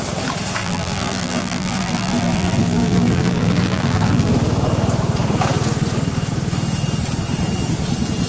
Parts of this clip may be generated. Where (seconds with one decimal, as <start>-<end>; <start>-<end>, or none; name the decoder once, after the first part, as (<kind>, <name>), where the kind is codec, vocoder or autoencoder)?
0.6-4.3 (vocoder, BigVGAN v2)